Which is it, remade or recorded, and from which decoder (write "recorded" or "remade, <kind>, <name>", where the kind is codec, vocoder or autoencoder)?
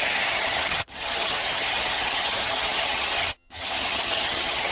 remade, vocoder, HiFi-GAN